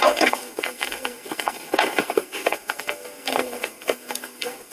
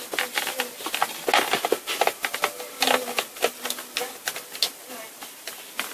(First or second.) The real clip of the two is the second